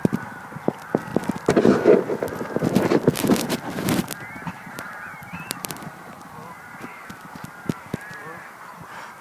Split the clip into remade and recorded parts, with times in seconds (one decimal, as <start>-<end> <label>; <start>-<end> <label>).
0.0-1.1 remade; 1.1-2.7 recorded; 2.7-6.9 remade; 6.9-7.8 recorded; 7.8-9.2 remade